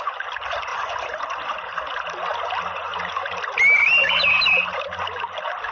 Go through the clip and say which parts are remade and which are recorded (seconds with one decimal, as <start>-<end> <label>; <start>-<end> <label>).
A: 0.0-5.7 recorded